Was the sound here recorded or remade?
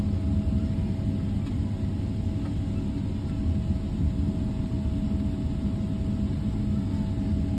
recorded